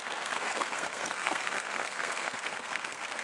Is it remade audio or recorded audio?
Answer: remade